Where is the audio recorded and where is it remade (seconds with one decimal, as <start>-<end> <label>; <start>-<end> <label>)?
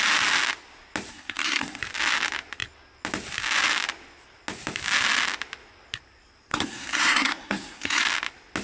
0.0-1.1 recorded; 1.1-1.8 remade; 1.8-6.5 recorded; 6.5-8.0 remade; 8.0-8.6 recorded